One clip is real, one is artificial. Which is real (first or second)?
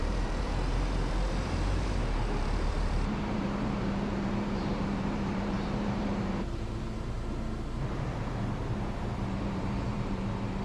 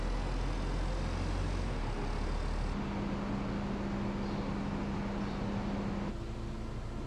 second